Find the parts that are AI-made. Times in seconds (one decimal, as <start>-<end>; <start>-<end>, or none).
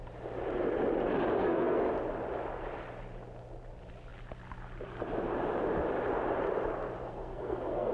1.4-1.9; 7.0-7.9